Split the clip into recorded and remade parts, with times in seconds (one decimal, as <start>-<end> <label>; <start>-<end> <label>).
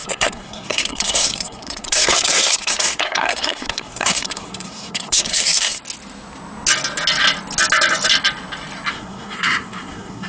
0.0-5.8 remade; 5.8-8.9 recorded; 8.9-10.3 remade